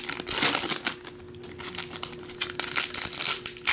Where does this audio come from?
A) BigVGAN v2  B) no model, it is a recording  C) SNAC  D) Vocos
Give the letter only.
B